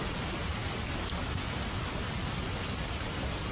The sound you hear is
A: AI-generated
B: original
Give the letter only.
B